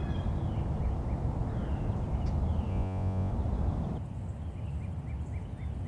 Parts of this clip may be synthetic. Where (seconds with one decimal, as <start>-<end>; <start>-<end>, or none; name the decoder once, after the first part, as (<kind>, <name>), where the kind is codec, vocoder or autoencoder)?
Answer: 2.7-3.3 (vocoder, Vocos)